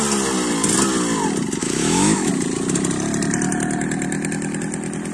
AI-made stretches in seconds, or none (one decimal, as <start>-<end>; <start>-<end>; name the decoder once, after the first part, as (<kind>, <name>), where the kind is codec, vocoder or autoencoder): 1.6-2.3 (autoencoder, DAC-VAE)